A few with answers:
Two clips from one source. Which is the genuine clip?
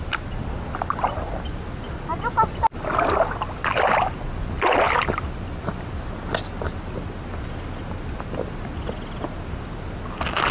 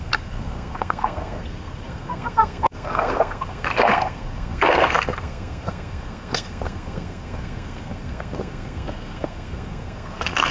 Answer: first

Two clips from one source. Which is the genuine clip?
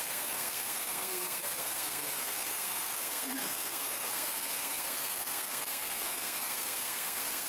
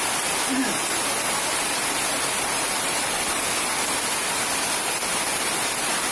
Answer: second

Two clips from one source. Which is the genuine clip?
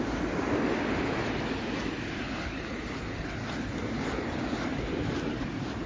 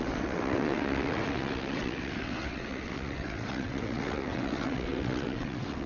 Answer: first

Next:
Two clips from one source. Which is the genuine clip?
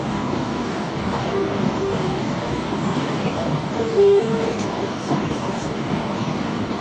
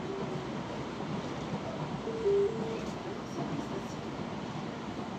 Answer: second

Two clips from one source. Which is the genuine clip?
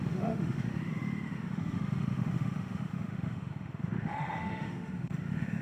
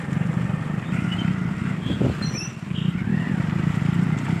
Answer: second